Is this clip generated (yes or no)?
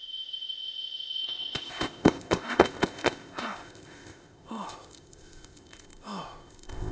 yes